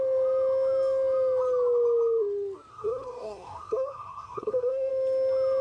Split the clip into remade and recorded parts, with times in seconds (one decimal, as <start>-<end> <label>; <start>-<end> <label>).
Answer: 0.0-2.7 recorded; 2.7-4.9 remade; 4.9-5.6 recorded